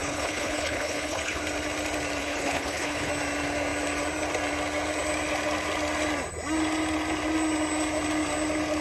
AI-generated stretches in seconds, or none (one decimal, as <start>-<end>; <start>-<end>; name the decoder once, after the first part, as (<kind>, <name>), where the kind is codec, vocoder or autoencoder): 0.0-1.4 (codec, HILCodec); 2.2-3.1